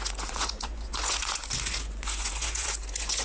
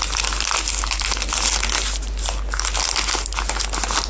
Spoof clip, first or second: first